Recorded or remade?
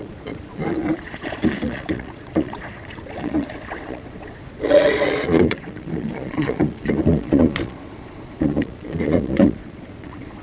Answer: remade